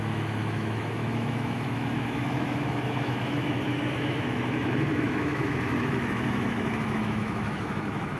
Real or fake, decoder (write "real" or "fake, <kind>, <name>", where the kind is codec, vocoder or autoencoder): fake, autoencoder, DAC-VAE